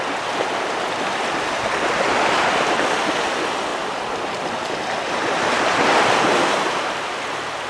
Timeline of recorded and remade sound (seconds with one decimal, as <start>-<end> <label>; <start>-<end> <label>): 0.0-7.7 recorded